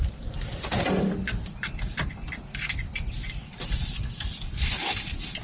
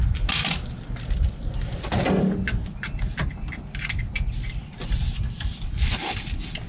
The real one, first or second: second